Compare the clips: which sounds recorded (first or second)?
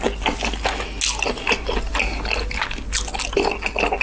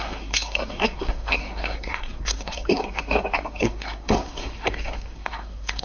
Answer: first